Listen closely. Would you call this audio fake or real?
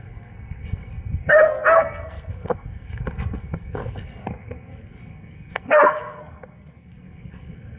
fake